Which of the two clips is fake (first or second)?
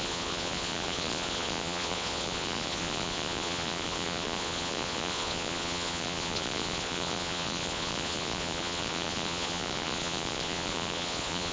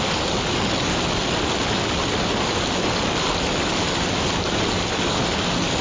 first